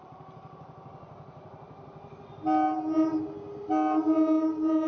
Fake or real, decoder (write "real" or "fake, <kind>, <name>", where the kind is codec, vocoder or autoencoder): real